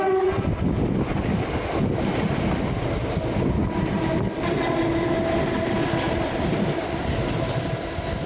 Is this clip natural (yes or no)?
yes